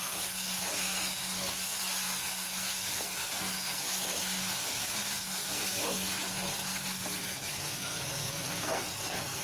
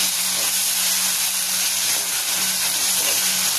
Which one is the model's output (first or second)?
first